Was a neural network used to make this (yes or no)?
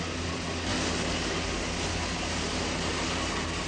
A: no